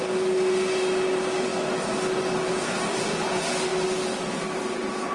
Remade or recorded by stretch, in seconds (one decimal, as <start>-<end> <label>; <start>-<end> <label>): 0.0-5.1 recorded